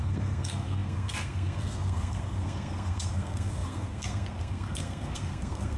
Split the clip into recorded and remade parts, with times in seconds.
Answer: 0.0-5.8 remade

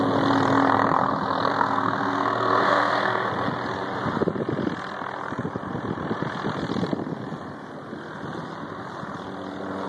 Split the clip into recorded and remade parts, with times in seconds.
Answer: 0.0-1.5 recorded; 1.5-3.3 remade; 3.3-9.9 recorded

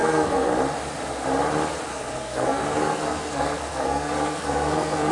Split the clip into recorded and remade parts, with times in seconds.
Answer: 0.0-0.5 remade; 0.5-1.9 recorded; 1.9-5.1 remade

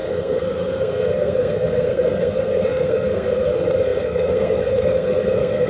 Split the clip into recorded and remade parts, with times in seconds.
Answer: 0.0-5.7 remade